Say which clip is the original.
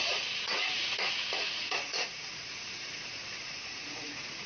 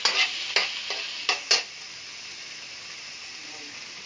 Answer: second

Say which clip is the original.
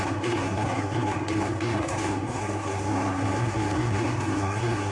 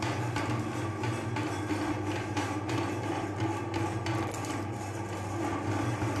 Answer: second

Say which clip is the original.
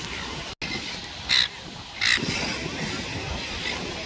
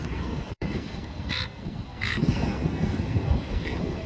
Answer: first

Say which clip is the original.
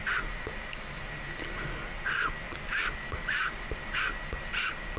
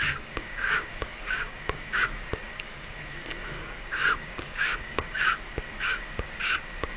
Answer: first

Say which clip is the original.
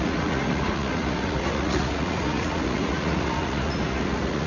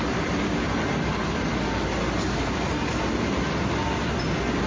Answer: second